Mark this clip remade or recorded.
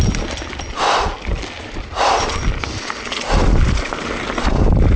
recorded